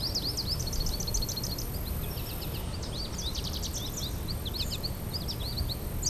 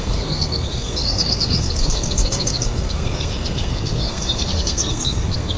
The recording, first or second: first